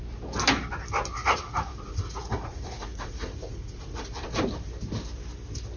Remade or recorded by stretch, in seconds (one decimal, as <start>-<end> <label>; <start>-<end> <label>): 0.0-1.2 recorded; 1.2-4.4 remade; 4.4-5.8 recorded